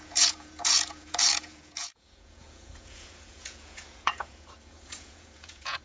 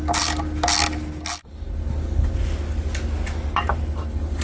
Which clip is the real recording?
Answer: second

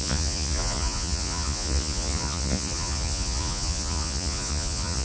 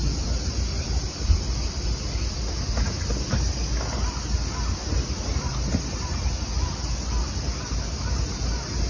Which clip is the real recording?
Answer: second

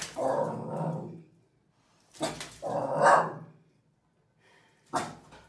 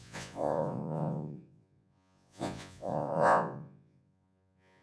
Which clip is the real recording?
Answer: first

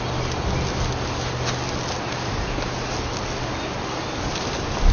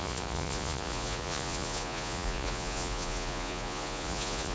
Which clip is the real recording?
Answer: first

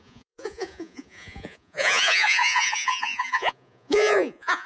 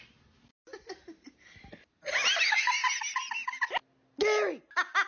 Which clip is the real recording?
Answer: second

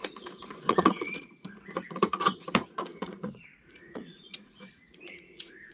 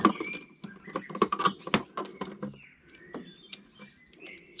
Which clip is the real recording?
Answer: second